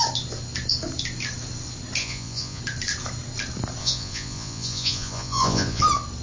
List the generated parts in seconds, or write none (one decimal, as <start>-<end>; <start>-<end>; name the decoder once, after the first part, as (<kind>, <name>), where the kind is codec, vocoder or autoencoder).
2.0-2.6 (vocoder, Vocos); 3.8-5.8